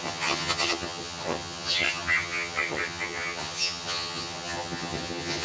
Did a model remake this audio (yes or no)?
yes